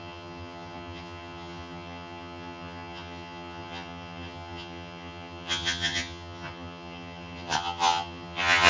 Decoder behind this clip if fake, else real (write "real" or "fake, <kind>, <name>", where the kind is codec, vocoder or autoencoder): fake, vocoder, HiFi-GAN